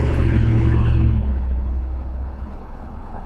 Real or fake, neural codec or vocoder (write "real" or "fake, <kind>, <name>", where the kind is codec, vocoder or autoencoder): fake, codec, HILCodec